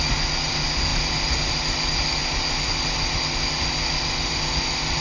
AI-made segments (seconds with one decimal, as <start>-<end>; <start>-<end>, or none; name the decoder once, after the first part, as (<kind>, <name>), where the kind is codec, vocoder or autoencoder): none